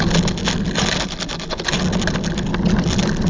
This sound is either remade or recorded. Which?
recorded